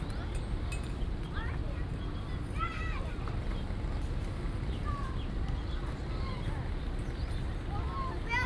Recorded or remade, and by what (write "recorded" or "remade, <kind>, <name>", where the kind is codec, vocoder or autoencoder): recorded